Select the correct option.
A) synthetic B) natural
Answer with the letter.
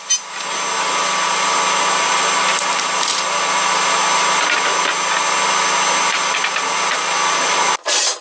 B